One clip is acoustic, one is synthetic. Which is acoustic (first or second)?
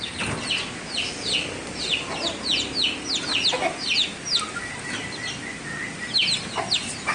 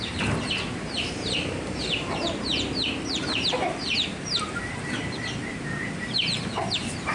first